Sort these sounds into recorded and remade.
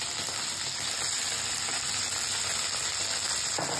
recorded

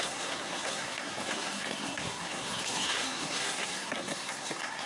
remade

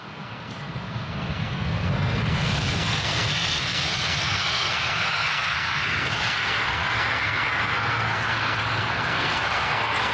remade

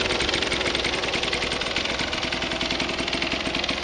recorded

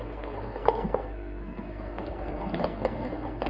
remade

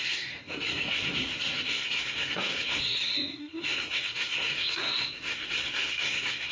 remade